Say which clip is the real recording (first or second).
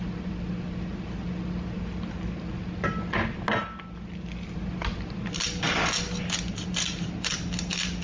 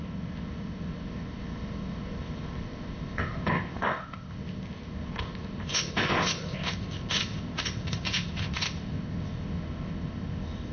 first